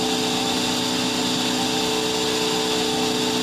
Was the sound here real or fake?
real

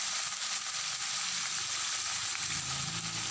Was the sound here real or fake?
real